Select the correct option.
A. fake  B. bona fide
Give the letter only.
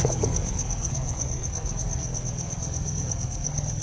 A